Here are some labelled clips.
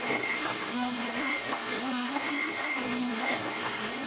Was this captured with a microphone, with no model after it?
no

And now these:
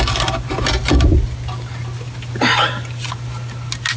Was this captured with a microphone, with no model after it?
yes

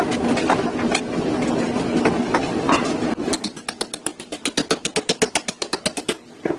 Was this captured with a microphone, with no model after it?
yes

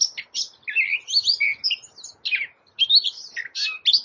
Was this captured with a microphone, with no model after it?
yes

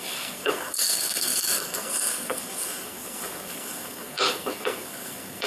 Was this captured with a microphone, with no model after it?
no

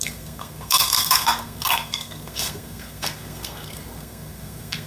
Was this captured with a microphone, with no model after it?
no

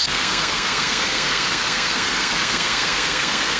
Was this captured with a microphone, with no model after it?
no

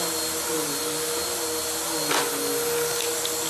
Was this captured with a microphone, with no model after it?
yes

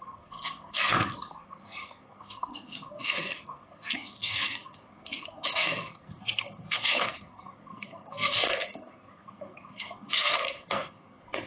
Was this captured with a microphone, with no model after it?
no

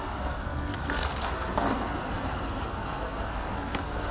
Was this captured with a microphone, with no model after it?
no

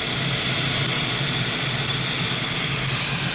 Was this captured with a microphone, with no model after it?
yes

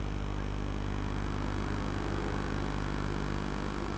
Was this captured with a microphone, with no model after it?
yes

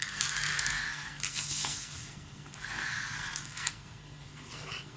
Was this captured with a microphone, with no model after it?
no